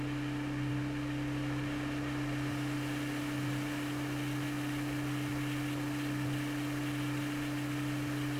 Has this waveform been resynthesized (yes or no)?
no